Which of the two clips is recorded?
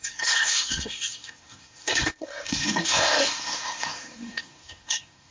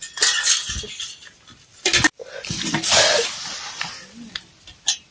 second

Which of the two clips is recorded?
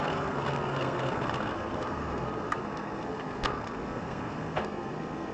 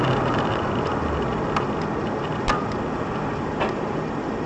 second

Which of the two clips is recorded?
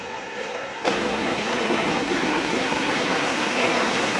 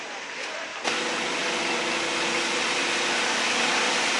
second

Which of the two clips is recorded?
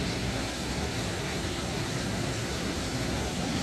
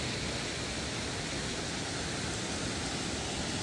second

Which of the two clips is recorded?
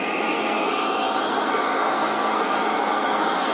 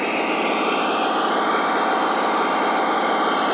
second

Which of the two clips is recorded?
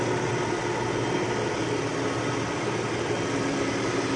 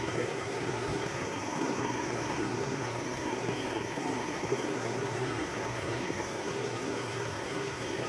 first